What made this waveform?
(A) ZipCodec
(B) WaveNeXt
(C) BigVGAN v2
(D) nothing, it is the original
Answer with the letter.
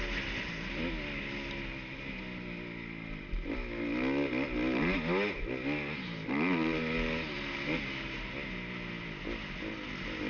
D